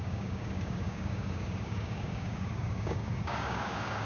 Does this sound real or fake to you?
fake